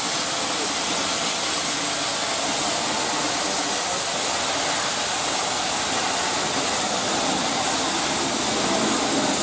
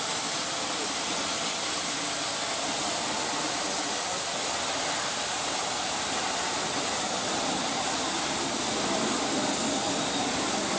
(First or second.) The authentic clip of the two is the first